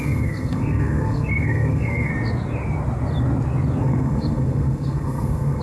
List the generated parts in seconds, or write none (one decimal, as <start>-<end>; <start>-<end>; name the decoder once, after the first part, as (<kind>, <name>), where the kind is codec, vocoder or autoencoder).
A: 0.0-2.1 (codec, SNAC); 3.8-5.6